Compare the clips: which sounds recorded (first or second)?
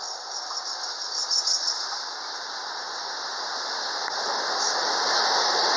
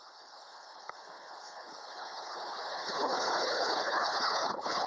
first